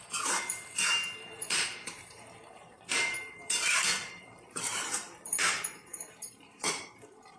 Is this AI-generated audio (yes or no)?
yes